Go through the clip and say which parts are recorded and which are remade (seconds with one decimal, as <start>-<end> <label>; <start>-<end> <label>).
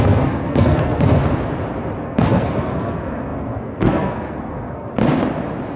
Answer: 0.0-1.2 remade; 1.2-2.0 recorded; 2.0-4.9 remade; 4.9-5.8 recorded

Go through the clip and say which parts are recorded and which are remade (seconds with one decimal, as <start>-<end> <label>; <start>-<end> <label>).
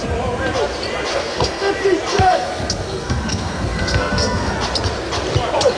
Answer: 0.0-1.1 recorded; 1.1-1.7 remade; 1.7-2.1 recorded; 2.1-4.5 remade; 4.5-5.8 recorded